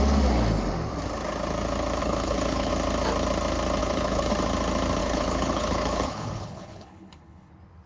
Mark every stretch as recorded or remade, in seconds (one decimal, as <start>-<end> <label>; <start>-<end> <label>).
0.0-2.0 recorded; 2.0-2.7 remade; 2.7-3.8 recorded; 3.8-4.3 remade; 4.3-5.0 recorded; 5.0-7.5 remade; 7.5-7.9 recorded